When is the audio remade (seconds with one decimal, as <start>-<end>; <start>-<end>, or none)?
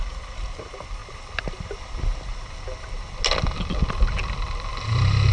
none